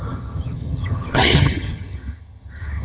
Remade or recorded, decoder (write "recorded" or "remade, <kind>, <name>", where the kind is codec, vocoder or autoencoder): remade, vocoder, HiFi-GAN